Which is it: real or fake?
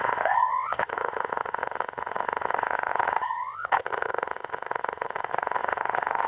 fake